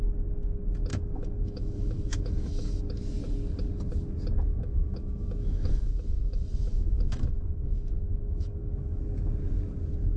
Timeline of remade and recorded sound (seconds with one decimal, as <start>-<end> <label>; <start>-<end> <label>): 0.0-0.9 recorded; 0.9-2.8 remade; 2.8-4.5 recorded; 4.5-9.0 remade; 9.0-10.2 recorded